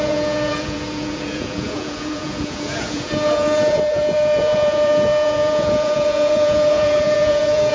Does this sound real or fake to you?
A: fake